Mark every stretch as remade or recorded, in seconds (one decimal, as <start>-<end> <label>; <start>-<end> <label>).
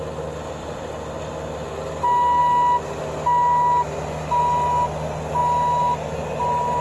0.0-0.6 recorded; 0.6-1.3 remade; 1.3-6.8 recorded